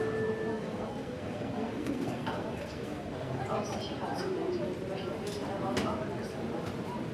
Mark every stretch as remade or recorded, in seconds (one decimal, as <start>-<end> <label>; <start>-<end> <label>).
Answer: 0.0-0.5 recorded; 0.5-3.4 remade; 3.4-7.1 recorded

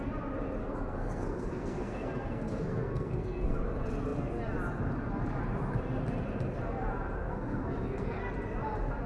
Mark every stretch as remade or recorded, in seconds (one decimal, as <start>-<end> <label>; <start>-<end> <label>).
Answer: 0.0-0.6 recorded; 0.6-3.6 remade; 3.6-7.2 recorded; 7.2-8.3 remade; 8.3-9.1 recorded

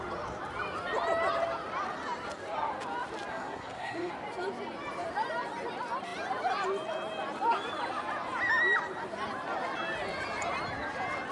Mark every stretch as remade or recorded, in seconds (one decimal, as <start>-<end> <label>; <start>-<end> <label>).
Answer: 0.0-3.3 recorded; 3.3-4.1 remade; 4.1-11.3 recorded

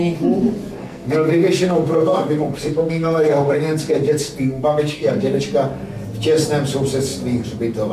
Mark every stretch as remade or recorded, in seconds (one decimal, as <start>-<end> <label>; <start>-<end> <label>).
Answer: 0.0-0.8 recorded; 0.8-5.4 remade; 5.4-7.9 recorded

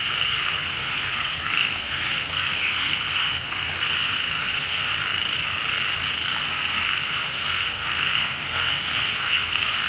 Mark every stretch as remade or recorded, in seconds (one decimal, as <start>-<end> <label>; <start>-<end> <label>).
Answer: 0.0-4.9 remade; 4.9-6.5 recorded; 6.5-9.9 remade

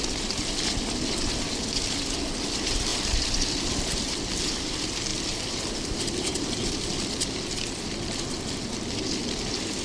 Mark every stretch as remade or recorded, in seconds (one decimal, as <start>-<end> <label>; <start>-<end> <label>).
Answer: 0.0-9.8 recorded